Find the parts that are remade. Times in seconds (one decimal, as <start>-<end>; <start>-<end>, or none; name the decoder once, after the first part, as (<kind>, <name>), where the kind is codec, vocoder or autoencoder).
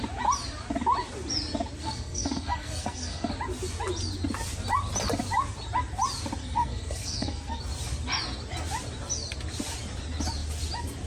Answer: 1.8-3.3 (codec, SNAC); 6.4-7.6